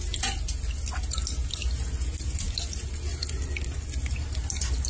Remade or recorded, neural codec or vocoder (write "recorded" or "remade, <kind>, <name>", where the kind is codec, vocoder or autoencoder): recorded